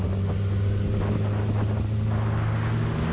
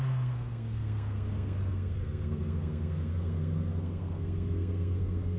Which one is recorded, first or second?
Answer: first